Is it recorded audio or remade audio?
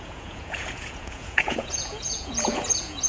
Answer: remade